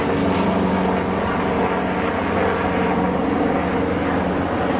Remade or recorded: recorded